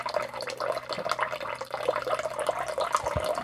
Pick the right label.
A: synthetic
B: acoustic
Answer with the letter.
B